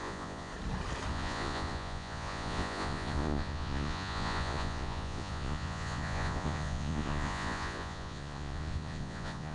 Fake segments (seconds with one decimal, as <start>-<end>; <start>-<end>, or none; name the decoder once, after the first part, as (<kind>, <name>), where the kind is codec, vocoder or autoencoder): 0.0-0.5 (vocoder, Vocos); 1.1-9.5